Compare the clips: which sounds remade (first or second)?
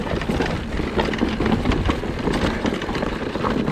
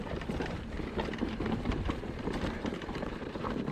second